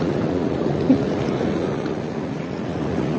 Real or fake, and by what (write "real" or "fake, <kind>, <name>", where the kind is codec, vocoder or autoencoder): fake, vocoder, Vocos